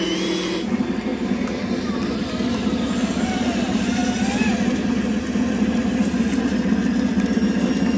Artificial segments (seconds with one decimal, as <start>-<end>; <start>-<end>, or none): none